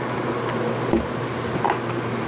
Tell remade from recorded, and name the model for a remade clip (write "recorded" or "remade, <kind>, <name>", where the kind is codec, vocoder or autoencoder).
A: recorded